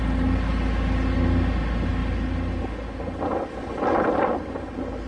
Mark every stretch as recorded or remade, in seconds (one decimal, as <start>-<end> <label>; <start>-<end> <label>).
0.0-5.1 recorded